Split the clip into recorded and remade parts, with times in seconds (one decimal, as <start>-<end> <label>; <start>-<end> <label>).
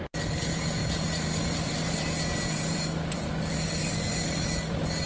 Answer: 0.0-5.1 recorded